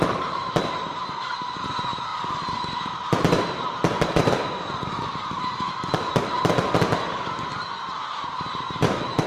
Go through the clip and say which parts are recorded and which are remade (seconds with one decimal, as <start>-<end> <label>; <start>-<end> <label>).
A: 0.0-9.3 remade